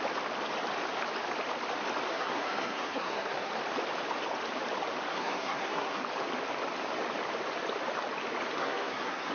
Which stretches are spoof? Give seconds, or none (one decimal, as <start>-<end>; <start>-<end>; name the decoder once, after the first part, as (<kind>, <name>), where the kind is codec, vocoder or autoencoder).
2.1-3.5 (codec, SNAC); 5.1-6.0; 8.6-9.3